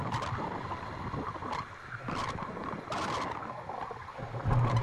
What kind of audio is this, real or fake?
real